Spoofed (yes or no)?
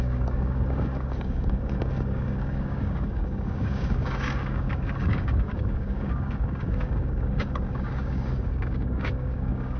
yes